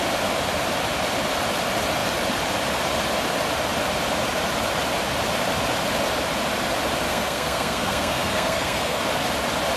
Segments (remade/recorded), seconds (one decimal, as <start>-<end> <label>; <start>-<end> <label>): 0.0-7.1 recorded; 7.1-9.0 remade; 9.0-9.8 recorded